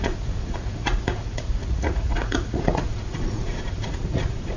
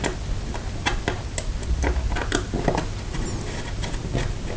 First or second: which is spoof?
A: first